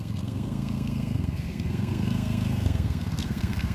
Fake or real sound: fake